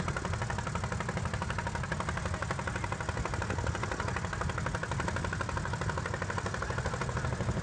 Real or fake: real